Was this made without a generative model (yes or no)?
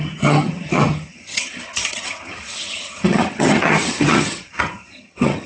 no